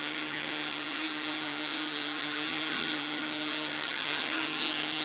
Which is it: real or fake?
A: fake